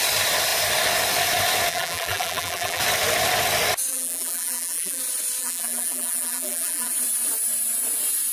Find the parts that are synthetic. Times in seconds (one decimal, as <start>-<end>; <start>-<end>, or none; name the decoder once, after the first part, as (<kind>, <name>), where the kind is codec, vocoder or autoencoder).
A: 1.7-2.8 (vocoder, BigVGAN v2); 3.9-5.0; 5.4-6.9